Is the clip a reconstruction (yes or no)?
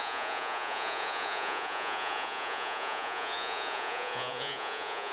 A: yes